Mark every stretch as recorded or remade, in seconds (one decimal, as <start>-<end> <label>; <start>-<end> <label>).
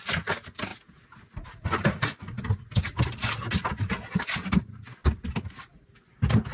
0.0-6.5 recorded